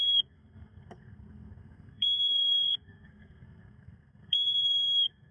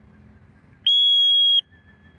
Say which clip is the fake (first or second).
first